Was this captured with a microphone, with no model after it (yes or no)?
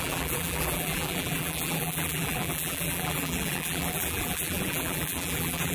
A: no